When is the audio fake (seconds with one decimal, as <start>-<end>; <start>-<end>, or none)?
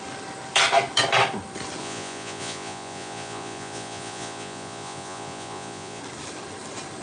1.8-6.0